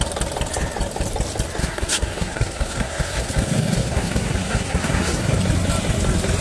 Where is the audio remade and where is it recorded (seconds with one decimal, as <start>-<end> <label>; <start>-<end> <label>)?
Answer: 0.0-1.6 recorded; 1.6-5.4 remade; 5.4-6.4 recorded